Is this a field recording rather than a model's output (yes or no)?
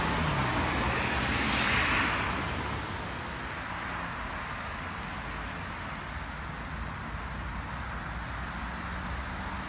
yes